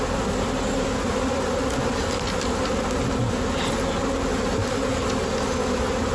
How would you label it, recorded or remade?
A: recorded